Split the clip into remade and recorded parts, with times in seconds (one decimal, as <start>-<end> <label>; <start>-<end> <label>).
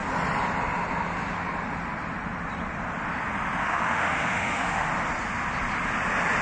0.0-3.6 recorded; 3.6-4.9 remade; 4.9-6.4 recorded